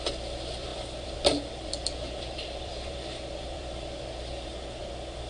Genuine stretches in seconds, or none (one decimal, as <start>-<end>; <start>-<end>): 0.0-0.7; 3.9-5.3